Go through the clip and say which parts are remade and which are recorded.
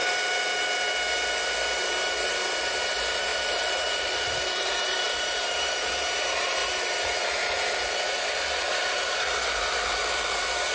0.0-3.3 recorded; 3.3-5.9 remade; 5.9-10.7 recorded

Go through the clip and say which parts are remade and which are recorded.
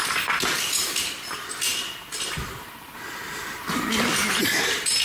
0.0-5.0 recorded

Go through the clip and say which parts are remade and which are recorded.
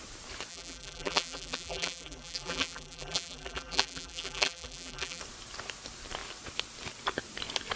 0.0-0.5 recorded; 0.5-5.2 remade; 5.2-7.8 recorded